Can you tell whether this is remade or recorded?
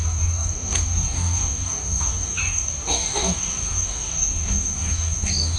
remade